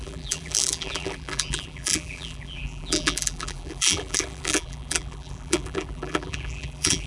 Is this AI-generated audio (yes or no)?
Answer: yes